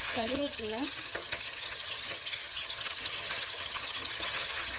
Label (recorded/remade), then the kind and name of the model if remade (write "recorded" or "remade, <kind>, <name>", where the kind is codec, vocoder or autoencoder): remade, vocoder, HiFi-GAN